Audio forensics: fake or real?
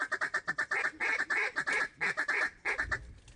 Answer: real